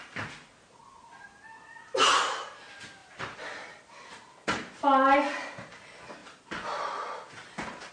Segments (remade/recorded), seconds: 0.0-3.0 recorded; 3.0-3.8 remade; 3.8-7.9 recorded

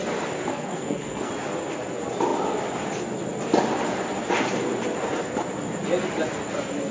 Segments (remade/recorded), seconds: 0.0-0.5 recorded; 0.5-1.3 remade; 1.3-6.9 recorded

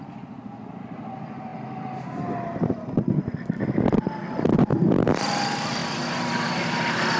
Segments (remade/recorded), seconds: 0.0-7.2 recorded

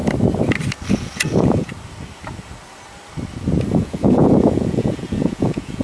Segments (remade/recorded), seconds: 0.0-0.9 recorded; 0.9-1.7 remade; 1.7-3.7 recorded; 3.7-5.8 remade